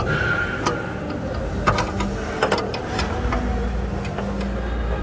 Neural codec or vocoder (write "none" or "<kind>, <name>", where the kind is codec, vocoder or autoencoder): none